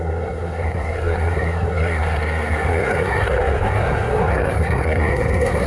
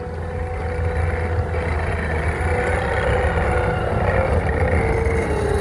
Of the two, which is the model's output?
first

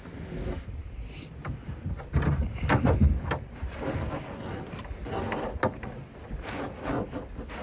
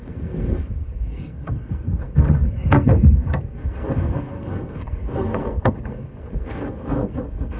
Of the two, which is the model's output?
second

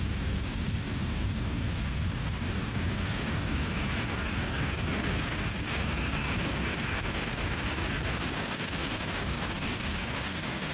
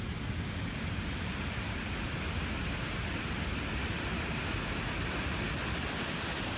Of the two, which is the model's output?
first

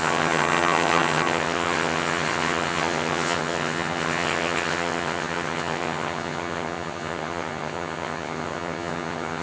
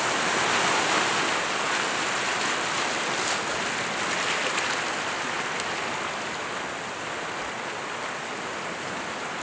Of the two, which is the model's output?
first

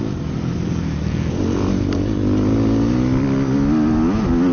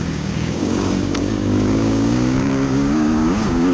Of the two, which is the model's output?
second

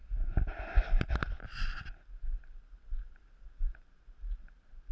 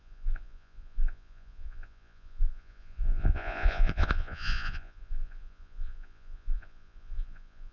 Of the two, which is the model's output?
second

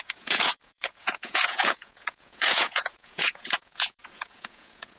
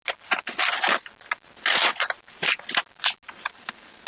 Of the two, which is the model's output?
first